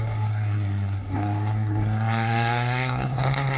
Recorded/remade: remade